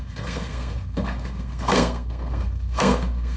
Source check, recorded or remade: remade